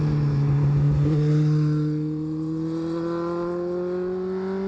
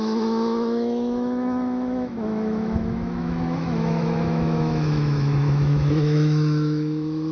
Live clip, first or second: first